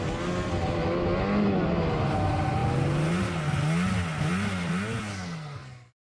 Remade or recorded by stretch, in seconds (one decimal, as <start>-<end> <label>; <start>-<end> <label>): 0.0-5.1 recorded; 5.1-6.1 remade